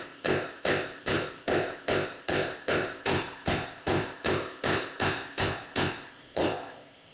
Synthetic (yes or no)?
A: yes